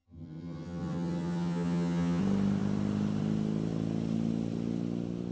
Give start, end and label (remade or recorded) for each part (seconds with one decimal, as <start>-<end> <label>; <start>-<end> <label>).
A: 0.0-2.2 remade; 2.2-5.3 recorded